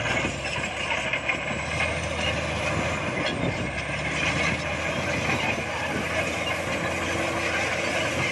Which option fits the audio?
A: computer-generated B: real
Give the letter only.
B